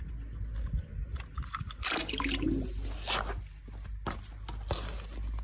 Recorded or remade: recorded